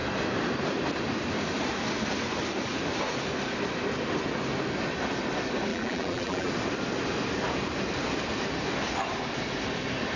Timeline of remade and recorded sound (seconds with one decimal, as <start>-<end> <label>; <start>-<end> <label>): 0.0-5.7 recorded; 5.7-6.5 remade; 6.5-10.2 recorded